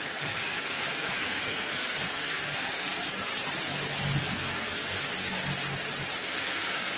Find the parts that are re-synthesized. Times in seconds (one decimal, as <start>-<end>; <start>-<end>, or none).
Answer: 0.0-3.3; 4.2-5.1; 6.2-7.0

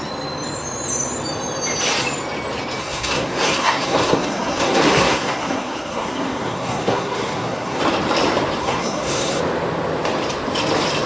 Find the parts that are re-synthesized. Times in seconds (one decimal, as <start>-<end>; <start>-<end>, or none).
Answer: 2.8-7.8; 8.6-9.4

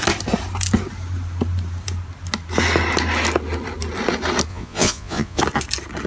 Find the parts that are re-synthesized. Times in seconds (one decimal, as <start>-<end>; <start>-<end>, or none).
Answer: 4.5-5.4

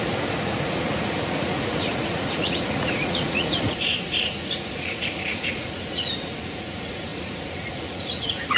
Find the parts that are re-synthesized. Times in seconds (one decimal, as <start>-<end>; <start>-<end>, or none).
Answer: 0.0-8.6

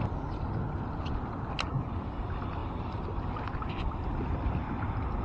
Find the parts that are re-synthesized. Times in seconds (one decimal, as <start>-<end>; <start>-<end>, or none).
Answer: none

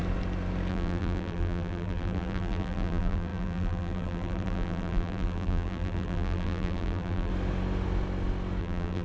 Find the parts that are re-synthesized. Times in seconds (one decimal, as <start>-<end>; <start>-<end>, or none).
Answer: 0.7-7.3; 8.6-9.0

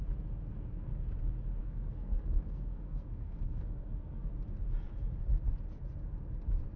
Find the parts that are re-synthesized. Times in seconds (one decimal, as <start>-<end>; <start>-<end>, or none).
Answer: 0.5-1.1; 1.6-4.3